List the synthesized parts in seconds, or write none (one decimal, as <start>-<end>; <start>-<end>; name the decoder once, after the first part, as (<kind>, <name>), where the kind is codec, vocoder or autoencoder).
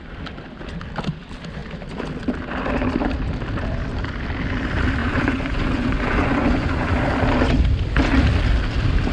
5.0-7.0 (vocoder, Vocos)